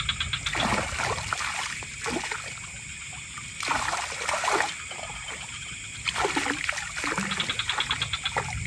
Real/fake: real